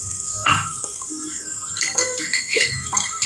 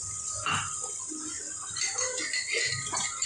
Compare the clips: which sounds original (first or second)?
second